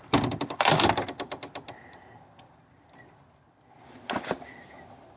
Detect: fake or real real